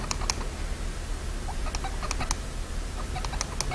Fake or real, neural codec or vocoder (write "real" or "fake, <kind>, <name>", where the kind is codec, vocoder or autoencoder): real